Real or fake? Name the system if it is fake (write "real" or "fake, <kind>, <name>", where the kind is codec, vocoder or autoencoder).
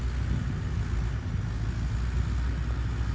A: real